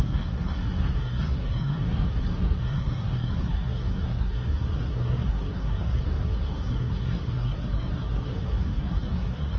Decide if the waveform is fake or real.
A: fake